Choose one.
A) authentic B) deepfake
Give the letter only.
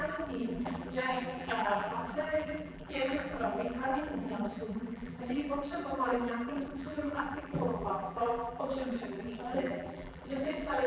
B